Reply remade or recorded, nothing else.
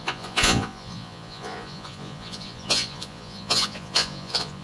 remade